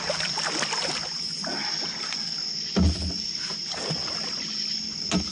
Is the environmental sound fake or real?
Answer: fake